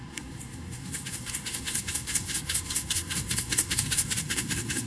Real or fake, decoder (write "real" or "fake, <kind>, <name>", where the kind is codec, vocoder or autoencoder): fake, codec, SNAC